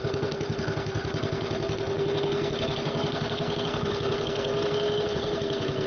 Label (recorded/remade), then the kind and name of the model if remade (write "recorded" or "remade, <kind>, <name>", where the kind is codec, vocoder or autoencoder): remade, codec, SNAC